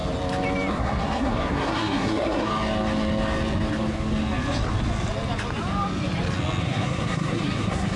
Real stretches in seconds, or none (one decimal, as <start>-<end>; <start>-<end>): 0.0-0.7; 2.5-6.6